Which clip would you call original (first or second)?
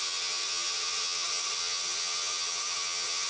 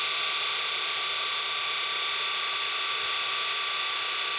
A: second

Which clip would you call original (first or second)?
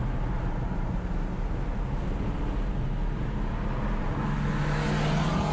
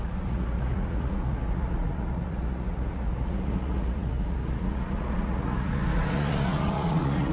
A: first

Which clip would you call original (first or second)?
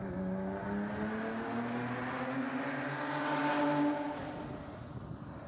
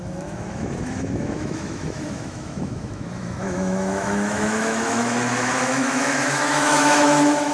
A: first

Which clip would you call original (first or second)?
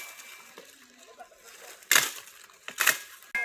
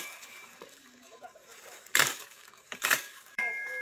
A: first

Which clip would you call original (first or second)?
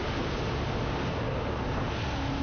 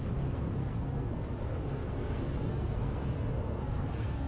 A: first